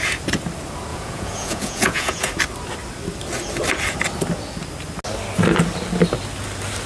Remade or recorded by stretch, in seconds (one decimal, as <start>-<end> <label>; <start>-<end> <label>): 0.0-0.9 recorded; 0.9-2.3 remade; 2.3-6.9 recorded